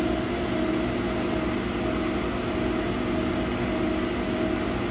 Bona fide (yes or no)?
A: yes